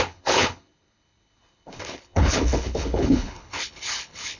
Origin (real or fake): fake